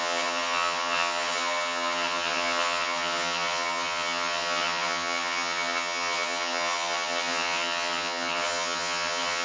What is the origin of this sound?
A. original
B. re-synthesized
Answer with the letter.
B